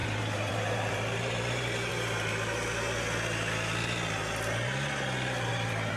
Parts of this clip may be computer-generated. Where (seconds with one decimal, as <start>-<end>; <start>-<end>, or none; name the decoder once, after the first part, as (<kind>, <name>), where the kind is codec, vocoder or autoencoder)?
0.0-1.9 (vocoder, BigVGAN v2); 5.5-6.0